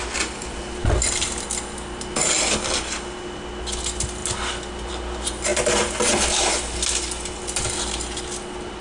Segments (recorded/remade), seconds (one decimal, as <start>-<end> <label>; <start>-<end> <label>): 0.0-8.8 recorded